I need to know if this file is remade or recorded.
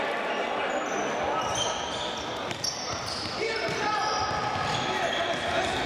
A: recorded